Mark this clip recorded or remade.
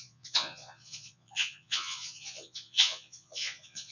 remade